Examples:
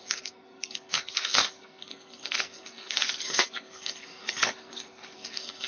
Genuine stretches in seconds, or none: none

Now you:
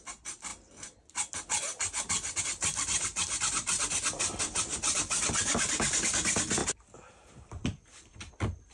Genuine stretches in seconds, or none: 0.5-2.4

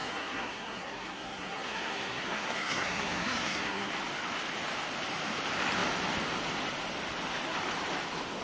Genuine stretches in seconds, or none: 3.9-8.4